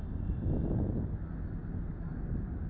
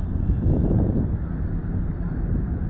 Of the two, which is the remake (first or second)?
second